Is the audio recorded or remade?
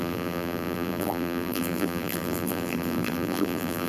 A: remade